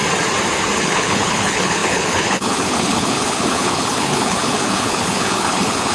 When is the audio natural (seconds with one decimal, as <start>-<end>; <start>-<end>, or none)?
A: 0.0-0.8